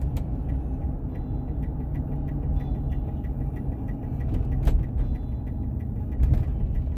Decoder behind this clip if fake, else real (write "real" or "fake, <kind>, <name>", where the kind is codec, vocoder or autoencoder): real